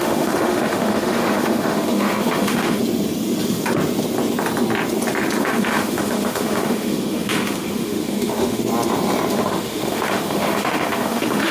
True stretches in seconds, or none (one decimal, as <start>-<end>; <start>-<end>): 2.8-5.4; 8.6-9.3